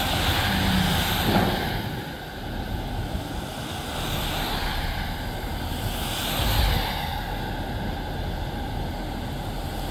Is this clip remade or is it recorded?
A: recorded